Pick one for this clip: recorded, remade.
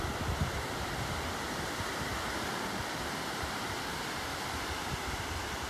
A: remade